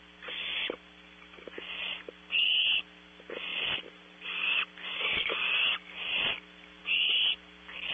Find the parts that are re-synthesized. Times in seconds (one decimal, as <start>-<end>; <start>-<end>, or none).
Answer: none

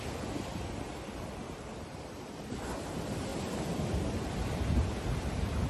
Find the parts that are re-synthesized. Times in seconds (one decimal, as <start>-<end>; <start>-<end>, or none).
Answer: none

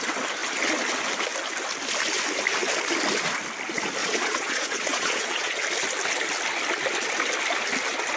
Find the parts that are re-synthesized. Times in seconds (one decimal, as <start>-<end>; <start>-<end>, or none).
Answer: 4.0-5.6